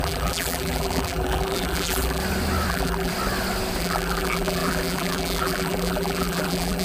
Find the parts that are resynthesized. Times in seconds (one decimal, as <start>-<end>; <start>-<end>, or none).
0.0-2.2; 2.7-3.1; 3.8-6.8